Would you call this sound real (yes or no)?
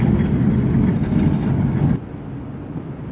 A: yes